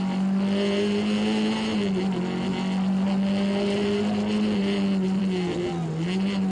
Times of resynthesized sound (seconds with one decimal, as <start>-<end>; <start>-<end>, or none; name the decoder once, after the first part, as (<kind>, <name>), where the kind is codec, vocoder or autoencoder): none